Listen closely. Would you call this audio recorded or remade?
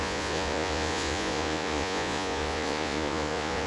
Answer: remade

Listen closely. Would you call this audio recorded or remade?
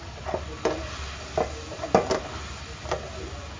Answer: recorded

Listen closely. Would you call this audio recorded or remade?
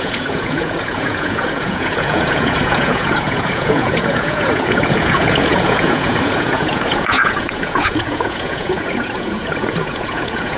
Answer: remade